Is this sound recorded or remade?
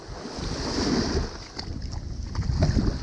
recorded